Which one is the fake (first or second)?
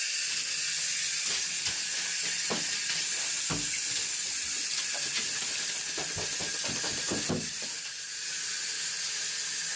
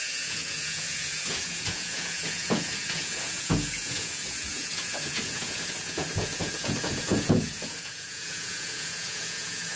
second